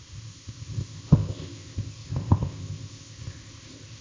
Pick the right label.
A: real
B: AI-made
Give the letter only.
B